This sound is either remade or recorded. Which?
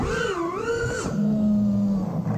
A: recorded